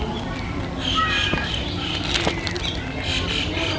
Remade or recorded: recorded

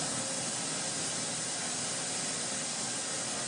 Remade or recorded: recorded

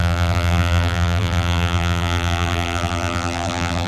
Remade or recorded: remade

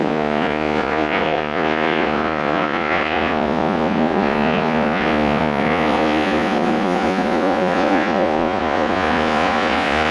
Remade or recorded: remade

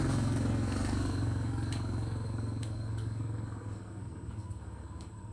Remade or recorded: remade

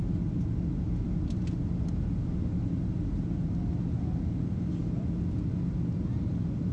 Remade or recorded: recorded